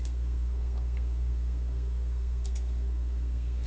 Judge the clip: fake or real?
fake